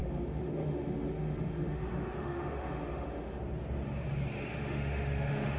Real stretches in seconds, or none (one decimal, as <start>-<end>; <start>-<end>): 3.4-4.4